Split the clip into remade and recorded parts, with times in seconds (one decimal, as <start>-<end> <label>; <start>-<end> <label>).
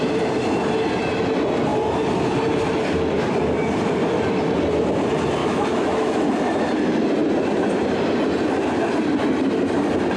0.0-5.4 recorded; 5.4-6.2 remade; 6.2-10.2 recorded